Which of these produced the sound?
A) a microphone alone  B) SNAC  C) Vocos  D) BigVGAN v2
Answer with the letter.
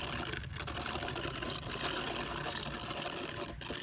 A